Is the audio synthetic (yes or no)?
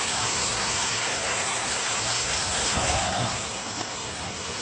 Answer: yes